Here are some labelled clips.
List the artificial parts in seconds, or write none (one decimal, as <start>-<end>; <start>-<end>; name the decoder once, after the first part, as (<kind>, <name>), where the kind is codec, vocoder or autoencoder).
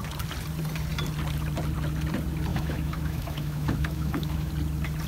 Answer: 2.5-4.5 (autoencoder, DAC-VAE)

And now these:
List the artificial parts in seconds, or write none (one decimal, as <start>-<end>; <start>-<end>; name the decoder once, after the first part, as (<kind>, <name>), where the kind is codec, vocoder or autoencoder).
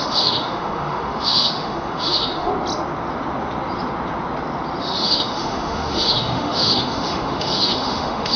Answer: 0.0-2.5 (autoencoder, DAC-VAE); 4.8-8.4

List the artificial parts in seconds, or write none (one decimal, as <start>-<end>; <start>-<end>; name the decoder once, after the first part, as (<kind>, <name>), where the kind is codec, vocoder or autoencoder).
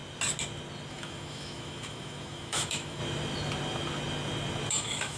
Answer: 0.9-3.0 (autoencoder, DAC-VAE); 4.7-5.2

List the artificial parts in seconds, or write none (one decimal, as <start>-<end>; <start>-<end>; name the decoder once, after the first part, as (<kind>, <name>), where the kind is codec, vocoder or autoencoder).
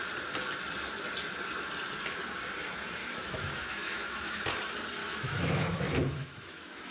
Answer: 3.0-4.4 (autoencoder, DAC-VAE); 5.0-6.9